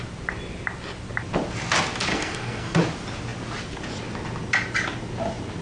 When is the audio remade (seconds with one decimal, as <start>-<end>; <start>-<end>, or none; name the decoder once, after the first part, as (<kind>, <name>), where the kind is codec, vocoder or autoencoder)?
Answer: 2.1-2.8 (codec, SNAC)